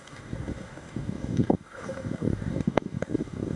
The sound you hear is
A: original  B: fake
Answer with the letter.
B